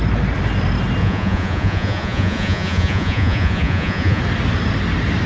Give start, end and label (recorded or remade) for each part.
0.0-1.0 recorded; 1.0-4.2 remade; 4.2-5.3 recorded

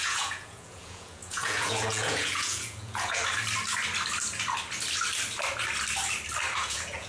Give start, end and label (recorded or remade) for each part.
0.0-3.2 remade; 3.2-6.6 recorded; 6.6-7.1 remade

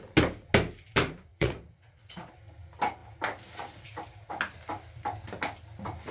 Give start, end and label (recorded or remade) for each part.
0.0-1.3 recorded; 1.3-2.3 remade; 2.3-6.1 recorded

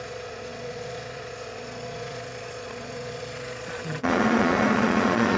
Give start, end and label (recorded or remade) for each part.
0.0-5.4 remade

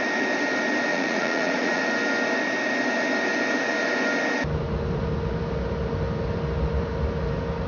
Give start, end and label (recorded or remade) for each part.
0.0-0.9 recorded; 0.9-1.8 remade; 1.8-7.7 recorded

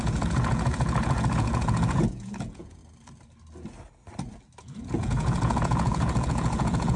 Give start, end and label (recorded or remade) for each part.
0.0-2.8 remade; 2.8-4.6 recorded; 4.6-7.0 remade

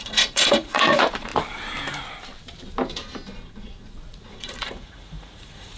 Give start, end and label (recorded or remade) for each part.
0.0-1.3 remade; 1.3-3.5 recorded; 3.5-5.8 remade